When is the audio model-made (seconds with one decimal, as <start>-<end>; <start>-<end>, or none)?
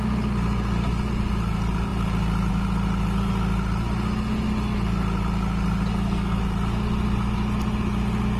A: 5.9-6.4